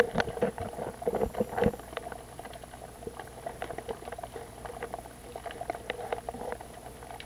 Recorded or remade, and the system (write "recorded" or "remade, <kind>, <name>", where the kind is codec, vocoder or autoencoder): recorded